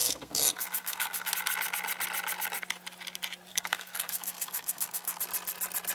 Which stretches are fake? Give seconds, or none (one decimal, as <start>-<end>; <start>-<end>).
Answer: 0.0-1.3; 3.5-5.2